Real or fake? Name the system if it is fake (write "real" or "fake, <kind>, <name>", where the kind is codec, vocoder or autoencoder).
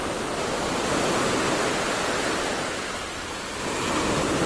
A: real